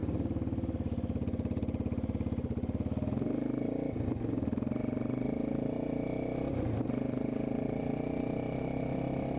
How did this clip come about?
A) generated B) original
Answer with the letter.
B